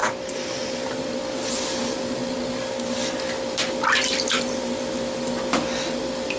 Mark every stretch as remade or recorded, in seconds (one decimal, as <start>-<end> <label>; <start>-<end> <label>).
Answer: 0.0-1.2 remade; 1.2-6.4 recorded